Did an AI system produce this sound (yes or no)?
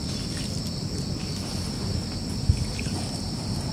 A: no